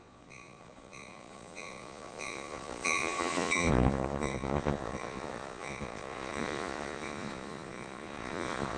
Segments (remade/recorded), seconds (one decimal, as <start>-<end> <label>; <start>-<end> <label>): 0.0-8.8 remade

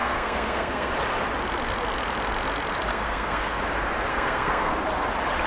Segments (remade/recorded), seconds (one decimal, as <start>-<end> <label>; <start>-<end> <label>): 0.0-0.9 remade; 0.9-2.9 recorded; 2.9-3.6 remade; 3.6-4.1 recorded; 4.1-4.7 remade; 4.7-5.5 recorded

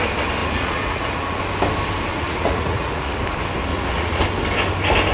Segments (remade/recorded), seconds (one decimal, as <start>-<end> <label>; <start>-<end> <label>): 0.0-0.4 recorded; 0.4-1.4 remade; 1.4-2.1 recorded; 2.1-3.2 remade; 3.2-3.7 recorded; 3.7-4.2 remade; 4.2-5.1 recorded

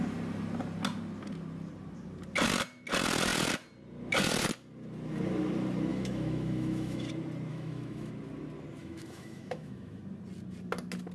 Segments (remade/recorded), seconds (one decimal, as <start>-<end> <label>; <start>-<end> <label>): 0.0-5.9 recorded; 5.9-7.1 remade; 7.1-7.5 recorded; 7.5-8.1 remade; 8.1-8.8 recorded; 8.8-10.0 remade; 10.0-11.1 recorded